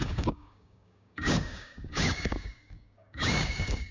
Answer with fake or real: fake